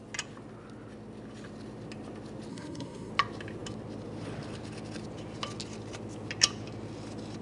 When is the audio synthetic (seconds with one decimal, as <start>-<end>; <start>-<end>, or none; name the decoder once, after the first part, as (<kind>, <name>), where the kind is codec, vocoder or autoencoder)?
2.5-3.1 (codec, SNAC)